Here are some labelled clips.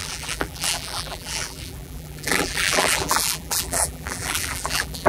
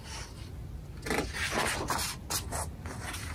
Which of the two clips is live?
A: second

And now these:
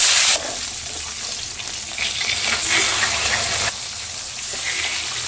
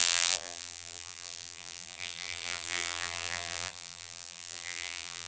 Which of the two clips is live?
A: first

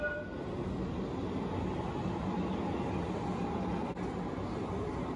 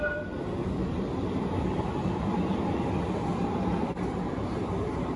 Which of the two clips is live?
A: first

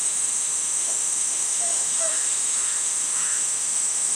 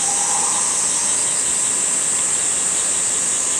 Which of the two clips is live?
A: second